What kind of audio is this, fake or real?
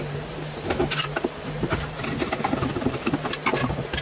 fake